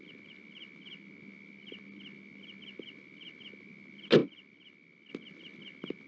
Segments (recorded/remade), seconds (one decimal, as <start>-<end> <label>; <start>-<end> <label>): 0.0-6.1 recorded